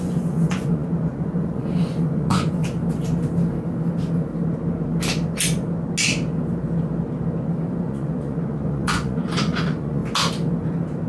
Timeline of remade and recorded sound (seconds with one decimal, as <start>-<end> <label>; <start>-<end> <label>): 0.0-2.6 remade; 2.6-7.7 recorded; 7.7-10.0 remade; 10.0-11.1 recorded

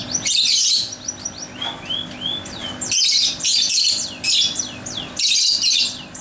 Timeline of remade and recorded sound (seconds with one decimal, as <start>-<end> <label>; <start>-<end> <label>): 0.0-6.2 recorded